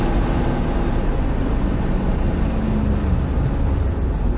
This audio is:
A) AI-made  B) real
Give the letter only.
B